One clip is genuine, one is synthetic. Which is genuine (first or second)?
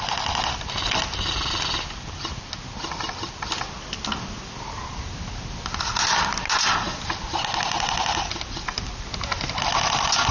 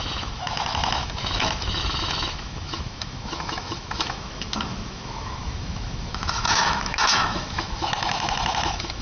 first